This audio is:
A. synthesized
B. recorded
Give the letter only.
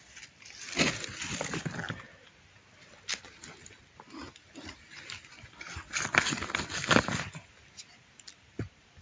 B